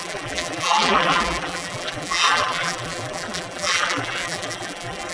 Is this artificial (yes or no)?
yes